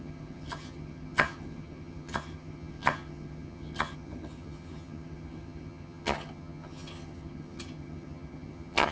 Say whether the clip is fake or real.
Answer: fake